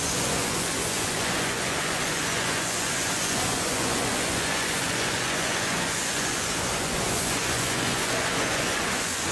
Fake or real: fake